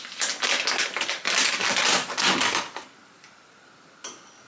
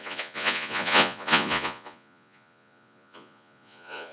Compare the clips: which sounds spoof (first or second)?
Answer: second